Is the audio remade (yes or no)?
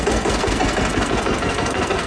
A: yes